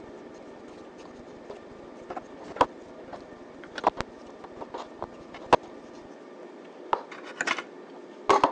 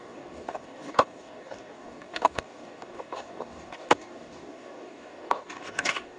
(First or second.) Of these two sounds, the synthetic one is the second